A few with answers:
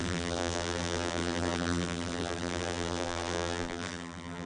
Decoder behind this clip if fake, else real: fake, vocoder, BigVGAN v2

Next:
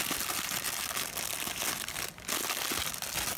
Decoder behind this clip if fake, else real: real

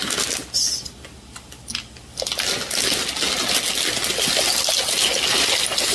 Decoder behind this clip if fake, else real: real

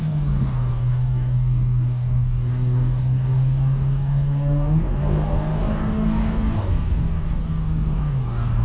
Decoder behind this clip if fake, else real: fake, codec, DAC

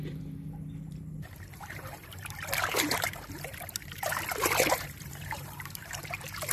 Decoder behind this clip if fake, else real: fake, vocoder, BigVGAN v2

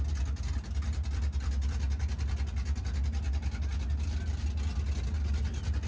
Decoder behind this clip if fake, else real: real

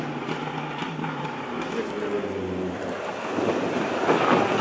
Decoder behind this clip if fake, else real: real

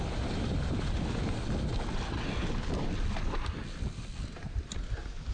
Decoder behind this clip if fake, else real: real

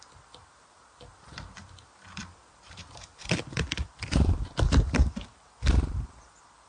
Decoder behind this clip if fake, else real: fake, vocoder, BigVGAN v2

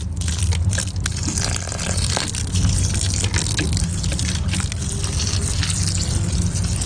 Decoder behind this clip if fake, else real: real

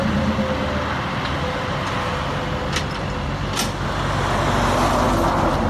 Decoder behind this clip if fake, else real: real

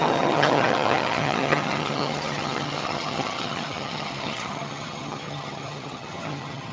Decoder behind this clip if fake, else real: fake, vocoder, HiFi-GAN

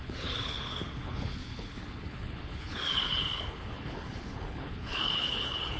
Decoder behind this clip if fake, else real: fake, codec, HILCodec